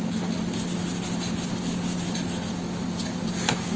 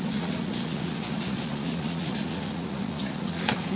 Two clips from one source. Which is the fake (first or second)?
second